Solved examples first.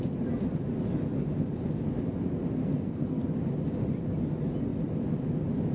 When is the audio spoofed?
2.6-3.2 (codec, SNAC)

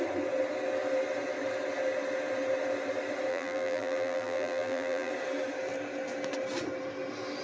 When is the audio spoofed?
3.3-5.1 (vocoder, BigVGAN v2)

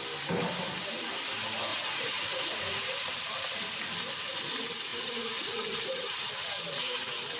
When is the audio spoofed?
1.7-2.8 (vocoder, Vocos); 4.9-6.3

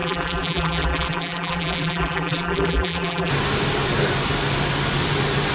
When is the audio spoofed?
0.0-3.3 (vocoder, BigVGAN v2)

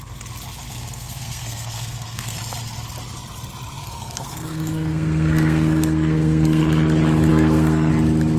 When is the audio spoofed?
0.7-2.4 (codec, SNAC); 3.8-6.6; 7.3-7.9